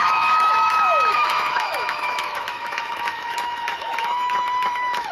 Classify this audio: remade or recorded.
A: remade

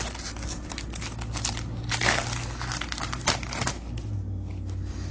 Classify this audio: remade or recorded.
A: recorded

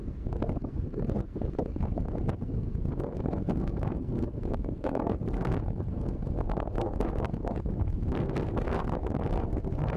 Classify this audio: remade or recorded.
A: remade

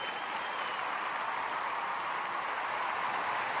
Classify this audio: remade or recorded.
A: recorded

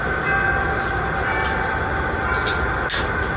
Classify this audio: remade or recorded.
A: recorded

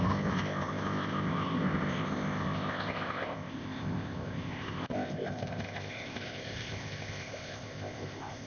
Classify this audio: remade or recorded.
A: remade